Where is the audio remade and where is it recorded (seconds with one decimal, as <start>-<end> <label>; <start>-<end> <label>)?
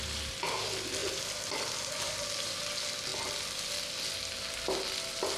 0.0-1.0 recorded; 1.0-2.2 remade; 2.2-5.4 recorded